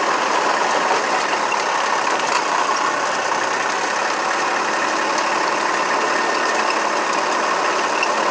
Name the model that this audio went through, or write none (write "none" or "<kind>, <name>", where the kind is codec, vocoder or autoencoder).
none